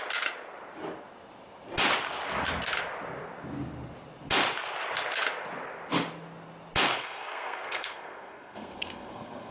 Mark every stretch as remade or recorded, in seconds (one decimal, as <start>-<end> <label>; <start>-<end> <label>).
0.0-6.9 recorded; 6.9-9.5 remade